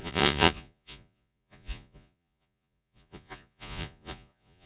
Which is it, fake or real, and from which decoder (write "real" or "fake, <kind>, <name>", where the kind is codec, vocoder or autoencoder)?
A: fake, vocoder, Vocos